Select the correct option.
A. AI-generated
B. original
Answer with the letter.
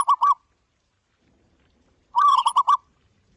A